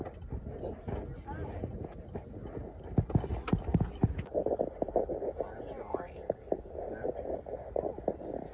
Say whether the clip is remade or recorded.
recorded